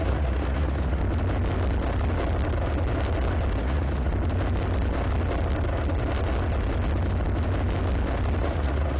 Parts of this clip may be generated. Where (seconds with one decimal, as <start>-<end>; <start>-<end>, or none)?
0.0-1.0; 3.6-4.1; 8.4-9.0

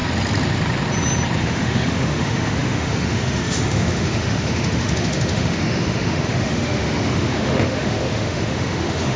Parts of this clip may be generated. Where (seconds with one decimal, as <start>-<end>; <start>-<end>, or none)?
1.4-9.2